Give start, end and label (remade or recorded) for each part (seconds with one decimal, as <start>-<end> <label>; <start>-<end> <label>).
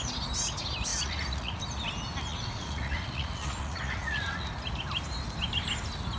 0.0-0.9 recorded; 0.9-1.6 remade; 1.6-2.3 recorded; 2.3-4.5 remade; 4.5-6.2 recorded